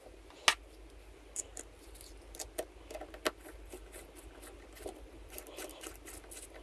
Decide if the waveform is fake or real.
real